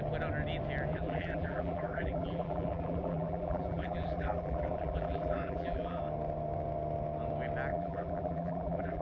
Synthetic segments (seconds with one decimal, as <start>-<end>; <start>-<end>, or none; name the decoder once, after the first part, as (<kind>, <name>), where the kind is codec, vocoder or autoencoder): 0.9-6.0 (vocoder, BigVGAN v2); 7.7-9.0